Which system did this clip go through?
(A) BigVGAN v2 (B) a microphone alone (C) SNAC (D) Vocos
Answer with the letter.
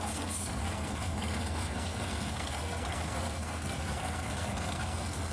C